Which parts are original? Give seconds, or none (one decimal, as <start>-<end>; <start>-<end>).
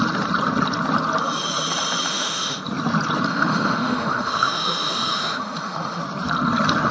0.0-2.1; 2.6-3.3; 6.0-6.9